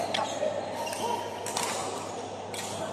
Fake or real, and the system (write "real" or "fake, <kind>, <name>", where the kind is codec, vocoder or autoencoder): real